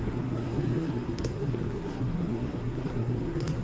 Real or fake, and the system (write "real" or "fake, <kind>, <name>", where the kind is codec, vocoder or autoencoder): fake, codec, SNAC